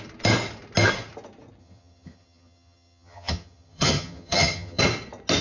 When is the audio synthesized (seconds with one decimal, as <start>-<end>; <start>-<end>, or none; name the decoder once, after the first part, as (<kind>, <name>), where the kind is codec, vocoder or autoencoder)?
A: 1.6-4.8 (vocoder, HiFi-GAN)